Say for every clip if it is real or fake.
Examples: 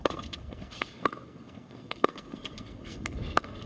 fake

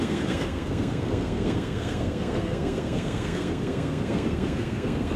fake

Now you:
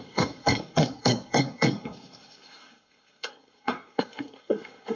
fake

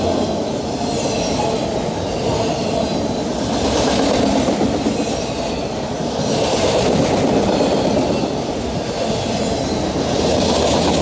real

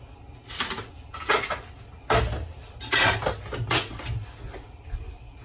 real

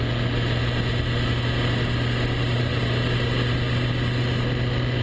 real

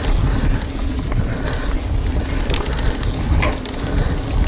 real